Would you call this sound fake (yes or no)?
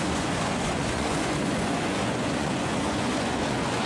yes